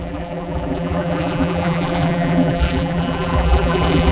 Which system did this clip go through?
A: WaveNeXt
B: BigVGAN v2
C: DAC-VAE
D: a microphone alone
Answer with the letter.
B